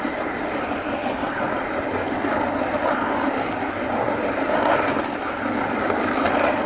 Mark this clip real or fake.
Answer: real